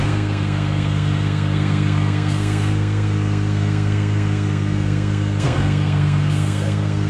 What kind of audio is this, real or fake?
fake